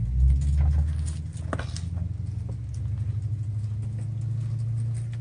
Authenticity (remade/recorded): recorded